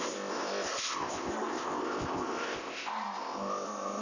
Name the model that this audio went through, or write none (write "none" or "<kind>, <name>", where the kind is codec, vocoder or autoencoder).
codec, ZipCodec